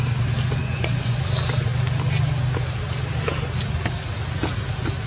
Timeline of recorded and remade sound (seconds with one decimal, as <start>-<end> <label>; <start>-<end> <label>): 0.0-0.6 recorded; 0.6-1.2 remade; 1.2-5.1 recorded